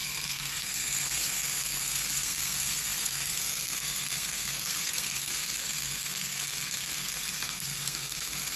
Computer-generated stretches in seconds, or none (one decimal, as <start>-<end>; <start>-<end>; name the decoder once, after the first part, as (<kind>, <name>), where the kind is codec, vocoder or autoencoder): 0.0-8.6 (codec, SNAC)